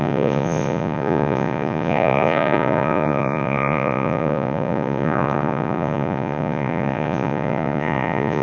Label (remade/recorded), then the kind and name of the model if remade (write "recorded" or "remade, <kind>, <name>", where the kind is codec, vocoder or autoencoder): remade, vocoder, Vocos